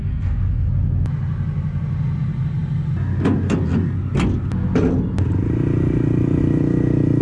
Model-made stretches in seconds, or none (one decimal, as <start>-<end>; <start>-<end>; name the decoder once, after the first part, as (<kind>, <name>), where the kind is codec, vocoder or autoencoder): 0.0-0.7 (codec, SNAC)